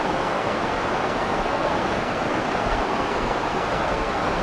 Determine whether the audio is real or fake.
fake